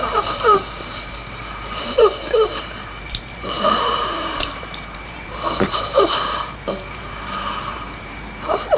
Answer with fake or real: fake